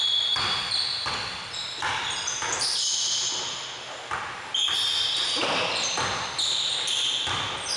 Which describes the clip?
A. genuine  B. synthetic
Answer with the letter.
A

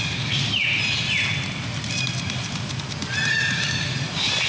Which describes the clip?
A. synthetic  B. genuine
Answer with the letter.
B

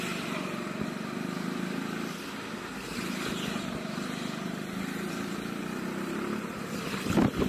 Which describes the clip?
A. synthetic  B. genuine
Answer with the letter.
B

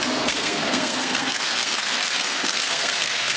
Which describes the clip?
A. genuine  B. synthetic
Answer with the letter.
B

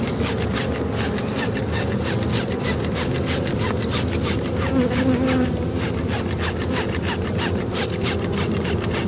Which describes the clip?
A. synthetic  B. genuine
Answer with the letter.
B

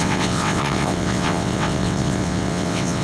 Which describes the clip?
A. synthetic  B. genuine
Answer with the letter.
A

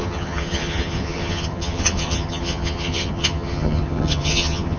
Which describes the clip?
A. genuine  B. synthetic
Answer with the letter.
B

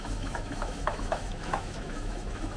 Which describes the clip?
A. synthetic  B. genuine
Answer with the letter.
A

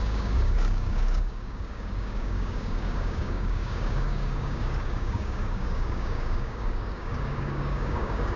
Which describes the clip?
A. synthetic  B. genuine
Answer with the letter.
A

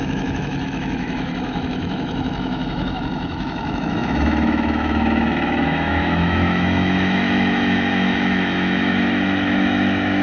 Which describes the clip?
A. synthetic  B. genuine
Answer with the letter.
A